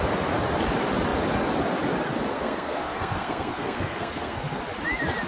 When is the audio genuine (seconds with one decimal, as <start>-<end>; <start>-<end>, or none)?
0.0-2.3; 4.6-5.3